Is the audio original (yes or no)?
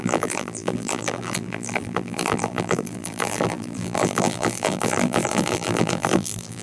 no